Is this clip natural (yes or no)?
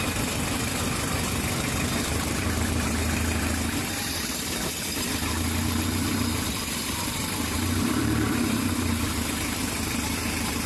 no